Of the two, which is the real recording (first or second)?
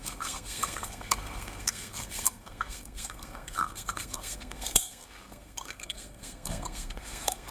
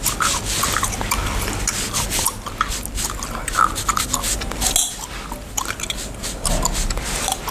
second